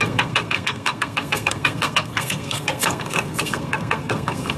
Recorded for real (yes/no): no